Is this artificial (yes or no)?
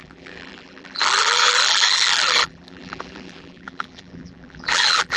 yes